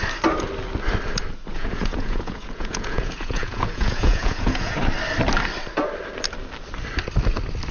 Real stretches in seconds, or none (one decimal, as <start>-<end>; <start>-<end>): 0.0-1.5; 4.8-7.7